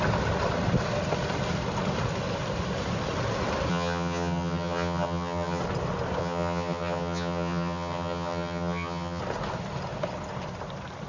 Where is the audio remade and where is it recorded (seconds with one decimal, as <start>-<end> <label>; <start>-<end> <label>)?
0.0-3.7 recorded; 3.7-5.6 remade; 5.6-6.2 recorded; 6.2-9.2 remade; 9.2-11.1 recorded